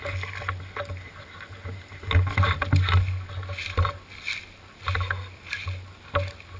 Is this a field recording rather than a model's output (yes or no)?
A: yes